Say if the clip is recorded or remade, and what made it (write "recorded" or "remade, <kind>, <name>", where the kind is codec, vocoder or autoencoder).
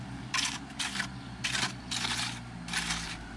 recorded